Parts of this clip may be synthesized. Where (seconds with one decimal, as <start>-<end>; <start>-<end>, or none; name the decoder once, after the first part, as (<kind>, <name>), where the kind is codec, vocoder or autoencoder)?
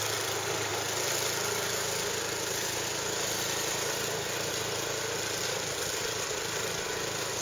none